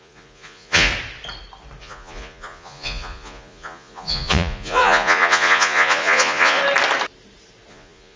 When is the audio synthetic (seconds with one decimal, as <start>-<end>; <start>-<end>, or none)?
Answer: 0.0-0.9; 1.8-6.6; 7.7-8.2